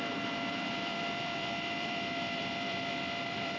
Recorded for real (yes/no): no